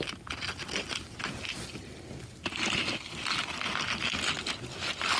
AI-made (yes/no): no